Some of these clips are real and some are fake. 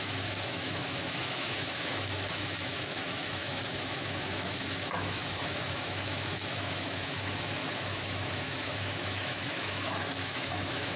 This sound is fake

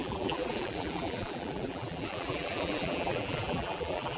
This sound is fake